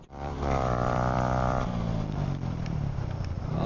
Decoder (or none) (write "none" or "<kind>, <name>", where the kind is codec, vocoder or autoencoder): vocoder, BigVGAN v2